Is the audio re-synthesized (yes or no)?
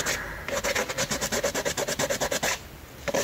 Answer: no